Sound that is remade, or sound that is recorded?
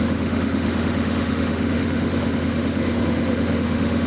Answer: remade